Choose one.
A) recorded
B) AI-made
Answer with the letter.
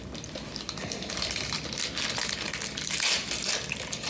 A